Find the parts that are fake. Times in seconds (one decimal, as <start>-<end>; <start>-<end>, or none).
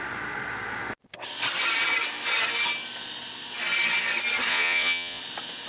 4.5-5.2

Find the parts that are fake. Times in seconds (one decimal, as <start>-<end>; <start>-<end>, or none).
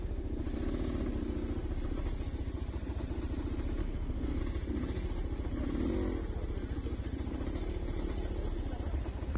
3.8-4.4